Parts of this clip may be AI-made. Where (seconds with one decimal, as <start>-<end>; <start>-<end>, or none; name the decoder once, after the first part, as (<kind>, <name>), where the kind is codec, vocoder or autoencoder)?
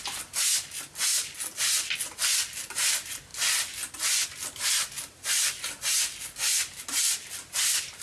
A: none